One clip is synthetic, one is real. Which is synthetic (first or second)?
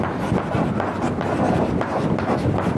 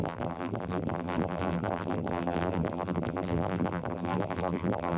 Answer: second